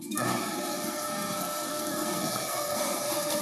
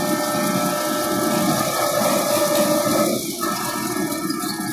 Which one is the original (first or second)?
second